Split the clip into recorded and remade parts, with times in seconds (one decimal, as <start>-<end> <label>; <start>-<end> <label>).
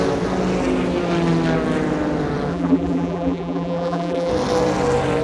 0.0-2.5 recorded; 2.5-4.3 remade; 4.3-5.2 recorded